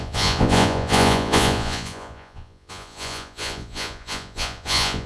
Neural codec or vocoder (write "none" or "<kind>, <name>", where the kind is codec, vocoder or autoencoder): vocoder, Vocos